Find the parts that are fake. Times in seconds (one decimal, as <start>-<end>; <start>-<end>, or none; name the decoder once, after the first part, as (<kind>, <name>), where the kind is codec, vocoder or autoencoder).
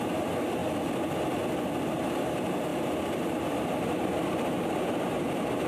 0.0-0.6 (vocoder, BigVGAN v2); 1.9-5.7